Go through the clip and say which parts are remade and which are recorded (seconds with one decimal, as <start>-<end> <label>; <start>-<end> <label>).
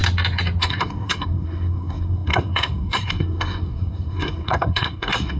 0.0-0.6 recorded; 0.6-5.4 remade